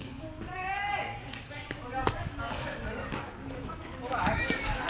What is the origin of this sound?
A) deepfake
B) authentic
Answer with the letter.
A